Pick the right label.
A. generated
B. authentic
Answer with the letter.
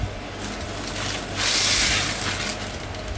B